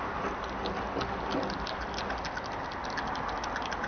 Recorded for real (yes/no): yes